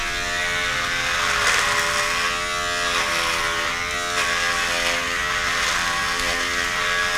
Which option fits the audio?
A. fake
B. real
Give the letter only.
B